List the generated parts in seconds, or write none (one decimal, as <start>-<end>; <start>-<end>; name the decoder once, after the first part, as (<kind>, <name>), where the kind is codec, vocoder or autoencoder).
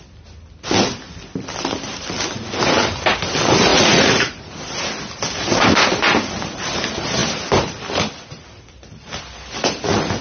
3.7-4.5 (vocoder, Vocos)